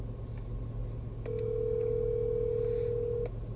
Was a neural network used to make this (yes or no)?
no